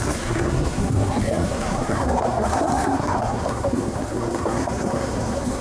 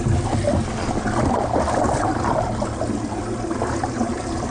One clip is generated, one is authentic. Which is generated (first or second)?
first